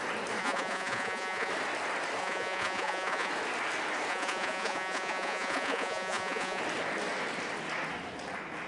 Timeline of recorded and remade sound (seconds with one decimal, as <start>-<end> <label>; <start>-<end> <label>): 0.0-0.4 recorded; 0.4-1.5 remade; 1.5-2.2 recorded; 2.2-3.3 remade; 3.3-4.1 recorded; 4.1-6.6 remade; 6.6-8.7 recorded